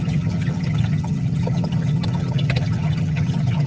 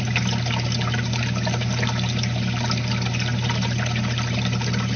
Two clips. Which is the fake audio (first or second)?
first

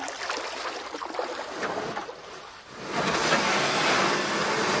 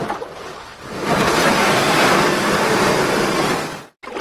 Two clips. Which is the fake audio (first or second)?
second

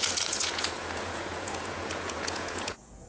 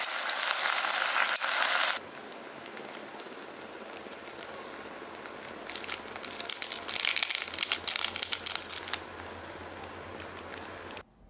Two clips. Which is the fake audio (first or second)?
first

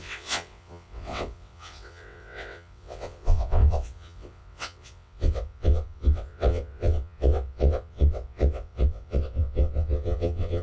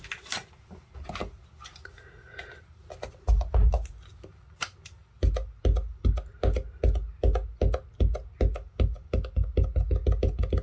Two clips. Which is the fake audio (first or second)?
first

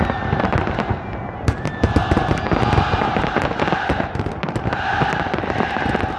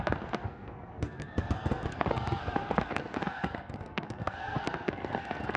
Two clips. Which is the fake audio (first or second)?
second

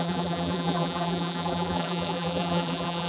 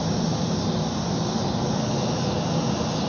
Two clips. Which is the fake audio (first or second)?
first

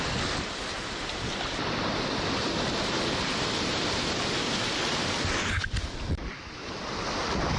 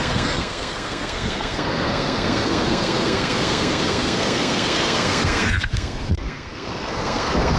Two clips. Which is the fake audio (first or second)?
second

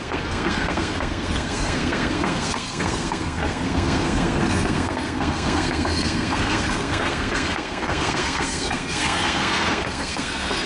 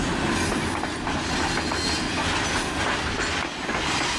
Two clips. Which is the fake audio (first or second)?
first